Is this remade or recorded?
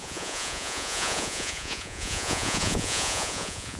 remade